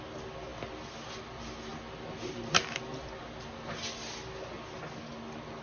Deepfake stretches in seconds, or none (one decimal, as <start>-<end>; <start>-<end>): none